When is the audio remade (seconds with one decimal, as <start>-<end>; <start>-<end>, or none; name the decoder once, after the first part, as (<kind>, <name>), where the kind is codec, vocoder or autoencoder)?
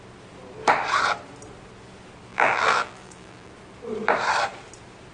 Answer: 2.3-3.5 (vocoder, BigVGAN v2)